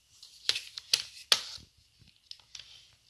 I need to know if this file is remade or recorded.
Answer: recorded